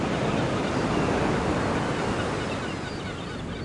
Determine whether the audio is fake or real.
real